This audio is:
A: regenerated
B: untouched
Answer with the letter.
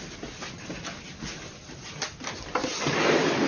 B